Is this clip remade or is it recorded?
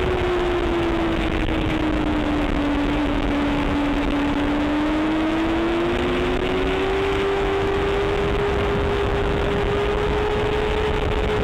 remade